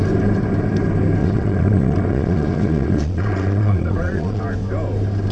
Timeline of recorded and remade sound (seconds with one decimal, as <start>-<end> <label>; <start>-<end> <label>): 0.0-1.2 recorded; 1.2-4.4 remade; 4.4-5.3 recorded